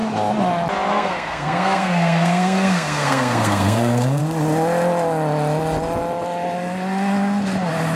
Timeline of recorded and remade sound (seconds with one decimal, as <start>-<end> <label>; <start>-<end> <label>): 0.0-0.9 recorded; 0.9-4.2 remade; 4.2-8.0 recorded